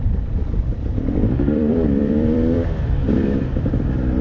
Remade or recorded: remade